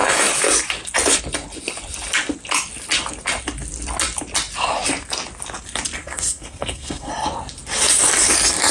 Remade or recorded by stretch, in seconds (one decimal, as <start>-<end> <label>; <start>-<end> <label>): 0.0-6.0 recorded; 6.0-7.1 remade; 7.1-8.7 recorded